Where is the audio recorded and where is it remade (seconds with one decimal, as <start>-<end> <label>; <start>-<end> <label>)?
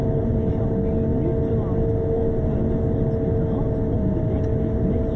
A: 0.0-5.2 recorded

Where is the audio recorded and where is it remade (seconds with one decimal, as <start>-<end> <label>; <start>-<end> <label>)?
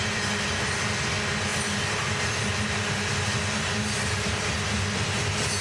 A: 0.0-5.6 recorded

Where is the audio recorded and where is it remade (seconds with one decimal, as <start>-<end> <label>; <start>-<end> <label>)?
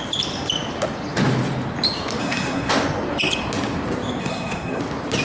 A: 0.0-2.2 recorded; 2.2-2.7 remade; 2.7-4.2 recorded; 4.2-4.8 remade; 4.8-5.2 recorded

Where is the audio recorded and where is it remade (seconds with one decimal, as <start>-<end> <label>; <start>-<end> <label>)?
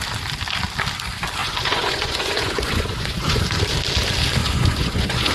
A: 0.0-1.4 recorded; 1.4-3.4 remade; 3.4-4.4 recorded; 4.4-5.3 remade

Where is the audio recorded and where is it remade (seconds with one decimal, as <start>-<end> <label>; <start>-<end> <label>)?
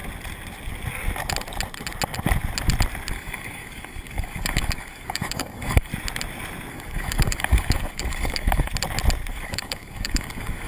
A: 0.0-3.1 recorded; 3.1-5.9 remade; 5.9-6.7 recorded; 6.7-8.7 remade; 8.7-9.3 recorded; 9.3-10.7 remade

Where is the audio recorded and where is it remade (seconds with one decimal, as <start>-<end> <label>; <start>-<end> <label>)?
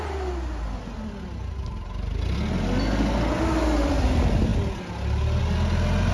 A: 0.0-6.1 recorded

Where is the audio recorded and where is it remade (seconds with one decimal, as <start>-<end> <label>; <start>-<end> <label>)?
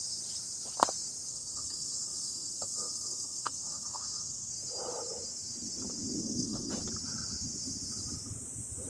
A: 0.0-1.3 recorded; 1.3-4.5 remade; 4.5-6.2 recorded; 6.2-6.7 remade; 6.7-8.9 recorded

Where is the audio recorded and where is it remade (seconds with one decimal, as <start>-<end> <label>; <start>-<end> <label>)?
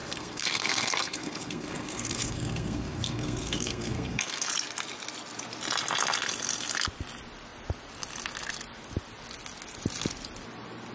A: 0.0-4.5 remade; 4.5-10.9 recorded